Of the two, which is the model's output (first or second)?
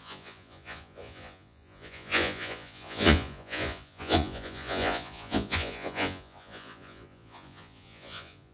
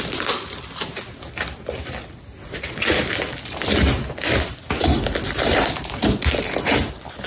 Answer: first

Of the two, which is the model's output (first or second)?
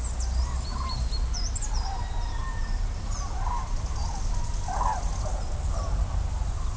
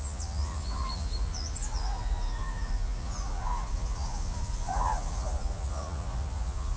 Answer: second